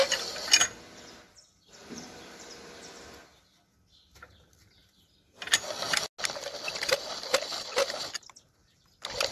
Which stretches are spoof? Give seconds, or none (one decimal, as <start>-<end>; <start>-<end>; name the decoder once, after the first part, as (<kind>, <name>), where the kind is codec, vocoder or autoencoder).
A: 1.8-2.9 (vocoder, BigVGAN v2)